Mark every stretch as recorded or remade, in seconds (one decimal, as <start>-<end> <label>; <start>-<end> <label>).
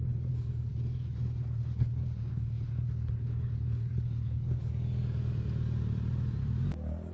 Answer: 0.0-4.7 remade; 4.7-7.1 recorded